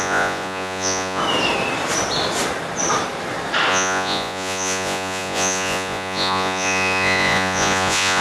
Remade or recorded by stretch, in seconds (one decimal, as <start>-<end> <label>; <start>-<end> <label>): 0.0-1.2 remade; 1.2-3.7 recorded; 3.7-8.2 remade